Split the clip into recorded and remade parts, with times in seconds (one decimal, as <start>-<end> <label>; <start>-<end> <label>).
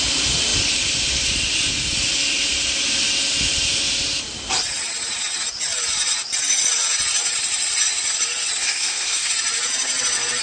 0.0-8.6 recorded; 8.6-9.3 remade; 9.3-10.4 recorded